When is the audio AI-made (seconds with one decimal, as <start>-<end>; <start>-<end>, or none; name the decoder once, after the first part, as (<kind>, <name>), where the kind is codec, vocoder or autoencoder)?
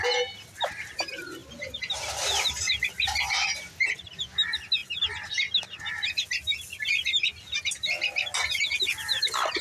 none